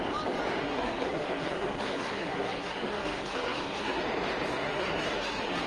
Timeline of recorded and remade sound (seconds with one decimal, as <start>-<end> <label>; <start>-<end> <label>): 0.0-0.6 recorded; 0.6-4.0 remade; 4.0-4.5 recorded; 4.5-5.7 remade